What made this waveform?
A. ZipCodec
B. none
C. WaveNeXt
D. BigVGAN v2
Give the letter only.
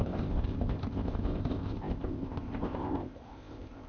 A